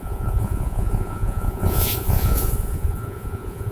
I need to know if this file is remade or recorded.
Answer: remade